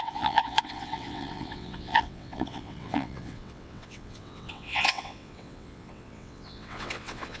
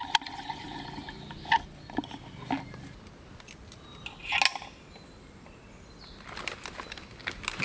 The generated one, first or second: first